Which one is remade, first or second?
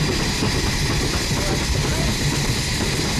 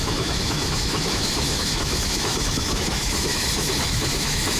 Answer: second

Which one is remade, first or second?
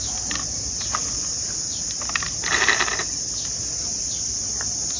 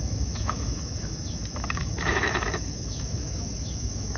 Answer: second